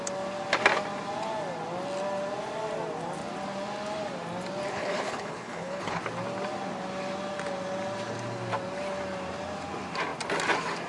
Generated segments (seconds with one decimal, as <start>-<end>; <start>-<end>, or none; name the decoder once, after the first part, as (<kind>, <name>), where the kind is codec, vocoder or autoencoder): 4.7-6.0 (codec, HILCodec)